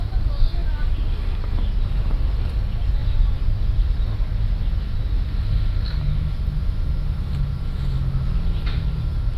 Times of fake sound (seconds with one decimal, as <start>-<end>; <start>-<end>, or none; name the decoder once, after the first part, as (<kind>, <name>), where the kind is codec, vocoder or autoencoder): none